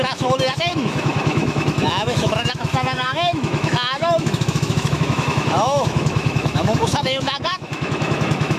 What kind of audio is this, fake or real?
fake